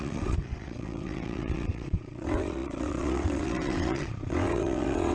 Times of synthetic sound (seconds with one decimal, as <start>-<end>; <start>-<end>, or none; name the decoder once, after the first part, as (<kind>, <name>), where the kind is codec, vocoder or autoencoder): 0.0-5.1 (vocoder, WaveNeXt)